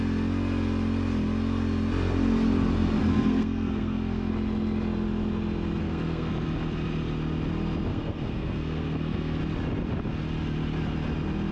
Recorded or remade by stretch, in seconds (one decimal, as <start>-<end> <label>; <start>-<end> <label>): 0.0-3.1 recorded; 3.1-4.3 remade; 4.3-5.8 recorded; 5.8-6.3 remade; 6.3-7.9 recorded; 7.9-9.4 remade; 9.4-11.5 recorded